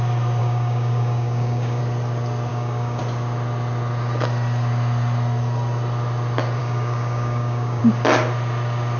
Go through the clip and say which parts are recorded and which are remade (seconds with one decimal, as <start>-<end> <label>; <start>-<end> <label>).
0.0-0.4 recorded; 0.4-1.8 remade; 1.8-2.5 recorded; 2.5-3.0 remade; 3.0-6.6 recorded; 6.6-7.8 remade; 7.8-9.0 recorded